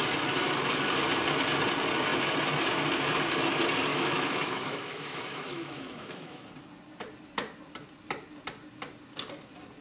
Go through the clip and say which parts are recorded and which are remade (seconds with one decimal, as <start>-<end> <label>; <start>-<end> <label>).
0.0-3.9 recorded; 3.9-6.5 remade; 6.5-9.8 recorded